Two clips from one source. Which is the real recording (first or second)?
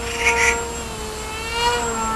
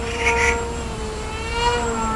first